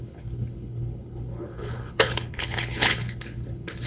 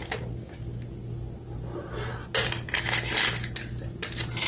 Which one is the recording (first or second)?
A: second